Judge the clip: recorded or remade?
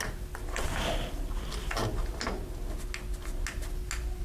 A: recorded